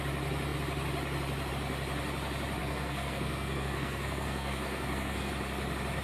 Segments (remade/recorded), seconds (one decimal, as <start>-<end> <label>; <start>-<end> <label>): 0.0-2.6 recorded; 2.6-5.3 remade; 5.3-6.0 recorded